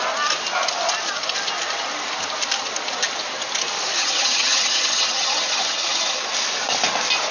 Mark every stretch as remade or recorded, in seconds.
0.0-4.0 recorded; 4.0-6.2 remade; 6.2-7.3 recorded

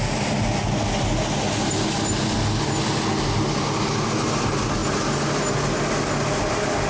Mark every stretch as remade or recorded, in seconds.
0.0-6.9 recorded

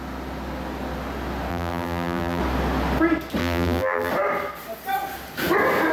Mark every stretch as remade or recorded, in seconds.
0.0-1.5 recorded; 1.5-2.4 remade; 2.4-3.4 recorded; 3.4-4.1 remade; 4.1-5.9 recorded

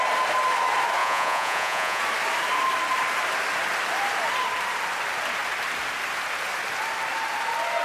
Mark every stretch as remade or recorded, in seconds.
0.0-1.0 recorded; 1.0-2.0 remade; 2.0-7.8 recorded

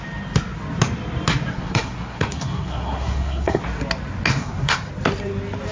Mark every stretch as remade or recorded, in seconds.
0.0-1.5 recorded; 1.5-3.6 remade; 3.6-4.3 recorded; 4.3-4.9 remade; 4.9-5.7 recorded

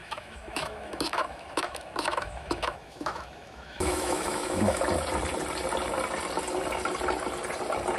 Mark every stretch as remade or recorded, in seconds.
0.0-4.8 remade; 4.8-8.0 recorded

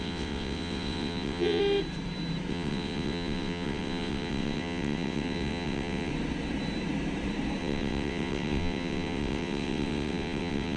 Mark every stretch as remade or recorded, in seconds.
0.0-1.6 remade; 1.6-2.5 recorded; 2.5-6.1 remade; 6.1-7.6 recorded; 7.6-10.8 remade